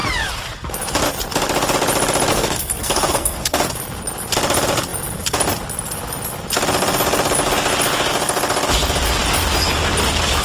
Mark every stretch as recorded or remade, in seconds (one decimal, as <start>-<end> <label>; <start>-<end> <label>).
0.0-2.3 recorded; 2.3-3.7 remade; 3.7-10.4 recorded